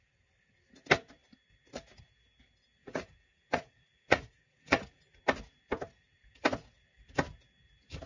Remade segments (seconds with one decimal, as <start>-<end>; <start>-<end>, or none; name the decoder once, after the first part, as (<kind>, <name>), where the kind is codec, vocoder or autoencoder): 2.8-5.2 (vocoder, Vocos)

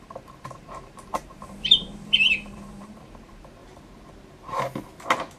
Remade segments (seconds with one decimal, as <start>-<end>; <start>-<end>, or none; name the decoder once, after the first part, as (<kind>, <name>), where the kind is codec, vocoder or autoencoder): 0.0-3.6 (vocoder, BigVGAN v2)

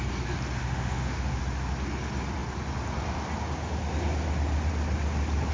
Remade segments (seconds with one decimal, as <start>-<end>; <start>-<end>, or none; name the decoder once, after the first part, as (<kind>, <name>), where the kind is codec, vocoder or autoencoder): 0.6-1.4 (autoencoder, DAC-VAE)

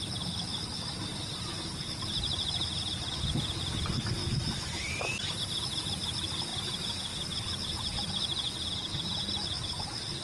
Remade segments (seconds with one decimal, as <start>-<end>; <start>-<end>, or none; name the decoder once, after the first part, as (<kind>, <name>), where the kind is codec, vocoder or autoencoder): 4.2-5.4 (vocoder, BigVGAN v2); 6.5-8.1

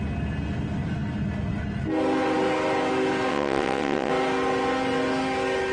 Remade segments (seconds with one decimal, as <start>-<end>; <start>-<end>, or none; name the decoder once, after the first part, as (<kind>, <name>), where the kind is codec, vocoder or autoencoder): 3.3-4.1 (vocoder, WaveNeXt)

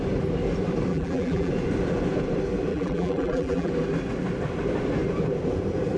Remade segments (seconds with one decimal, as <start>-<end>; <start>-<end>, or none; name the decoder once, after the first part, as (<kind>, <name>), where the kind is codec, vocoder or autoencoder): 0.9-1.5 (vocoder, BigVGAN v2); 2.7-3.7

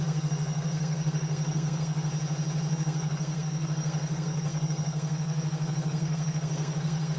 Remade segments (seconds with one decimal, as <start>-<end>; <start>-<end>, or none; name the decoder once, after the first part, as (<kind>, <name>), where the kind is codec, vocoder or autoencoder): 0.0-2.1 (codec, SNAC); 2.7-7.2